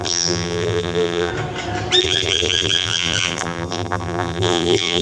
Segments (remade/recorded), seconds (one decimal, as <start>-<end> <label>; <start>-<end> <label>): 0.0-1.3 remade; 1.3-2.0 recorded; 2.0-5.0 remade